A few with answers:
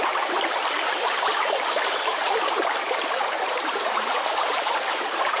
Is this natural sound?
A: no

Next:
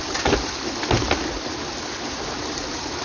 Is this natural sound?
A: yes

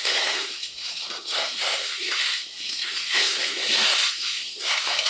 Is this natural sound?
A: no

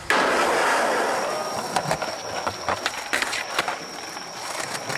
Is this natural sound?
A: yes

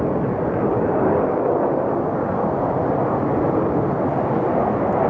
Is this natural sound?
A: yes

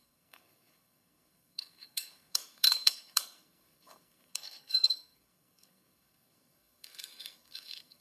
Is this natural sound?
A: no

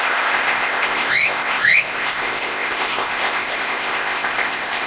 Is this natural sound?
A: no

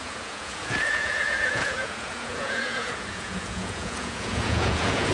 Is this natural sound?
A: no